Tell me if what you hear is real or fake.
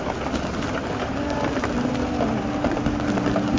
real